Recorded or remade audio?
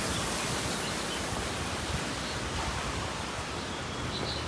recorded